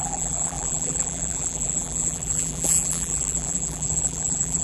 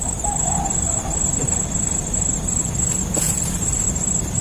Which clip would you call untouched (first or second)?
second